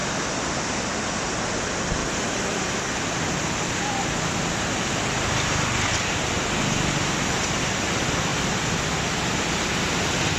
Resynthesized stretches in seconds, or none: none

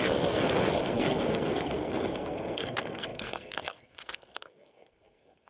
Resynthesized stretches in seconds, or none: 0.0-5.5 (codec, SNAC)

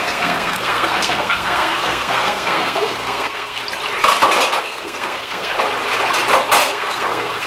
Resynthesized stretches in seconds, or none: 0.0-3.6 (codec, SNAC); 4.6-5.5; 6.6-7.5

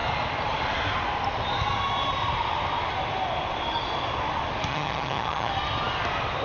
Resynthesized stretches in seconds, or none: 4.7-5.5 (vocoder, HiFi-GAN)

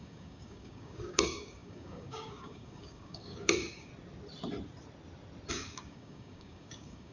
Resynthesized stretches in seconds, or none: 0.0-3.9 (codec, DAC); 5.5-7.1